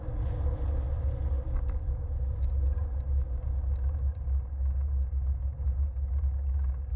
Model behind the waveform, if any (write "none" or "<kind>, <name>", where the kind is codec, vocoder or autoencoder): none